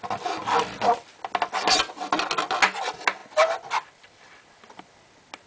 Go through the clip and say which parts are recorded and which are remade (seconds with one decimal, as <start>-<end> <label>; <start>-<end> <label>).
0.0-5.5 recorded